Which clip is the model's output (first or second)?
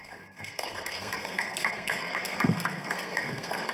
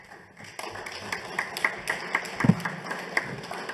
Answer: first